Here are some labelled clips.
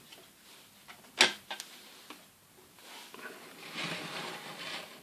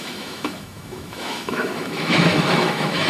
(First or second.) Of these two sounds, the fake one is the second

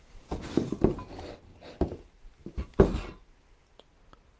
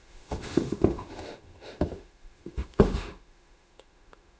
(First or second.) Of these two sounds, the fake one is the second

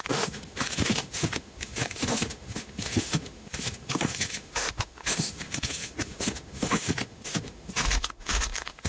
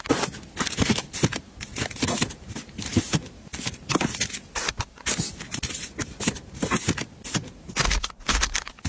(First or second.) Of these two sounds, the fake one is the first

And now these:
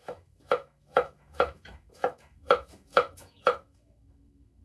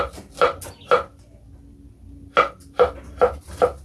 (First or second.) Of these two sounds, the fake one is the first